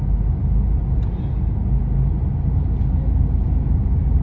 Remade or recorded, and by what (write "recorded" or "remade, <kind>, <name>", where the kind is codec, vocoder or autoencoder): recorded